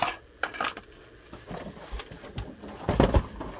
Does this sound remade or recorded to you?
recorded